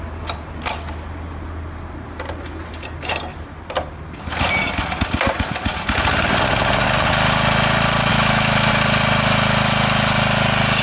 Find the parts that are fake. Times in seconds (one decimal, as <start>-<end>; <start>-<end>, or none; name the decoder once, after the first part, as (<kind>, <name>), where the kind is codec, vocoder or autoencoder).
8.1-8.7 (autoencoder, DAC-VAE)